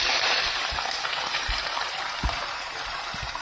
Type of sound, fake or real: fake